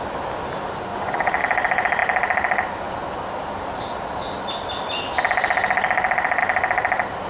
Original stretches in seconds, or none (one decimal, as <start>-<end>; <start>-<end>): 0.0-0.9; 1.4-7.3